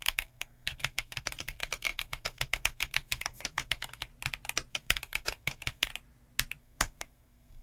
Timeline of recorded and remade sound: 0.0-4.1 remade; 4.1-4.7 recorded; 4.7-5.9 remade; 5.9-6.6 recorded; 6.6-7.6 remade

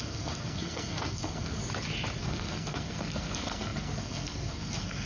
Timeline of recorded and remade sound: 0.0-1.6 remade; 1.6-2.2 recorded; 2.2-5.1 remade

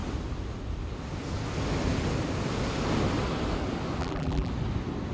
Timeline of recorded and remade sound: 0.0-4.0 recorded; 4.0-4.5 remade; 4.5-5.1 recorded